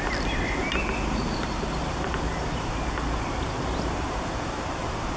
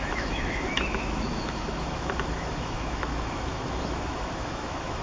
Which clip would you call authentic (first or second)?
first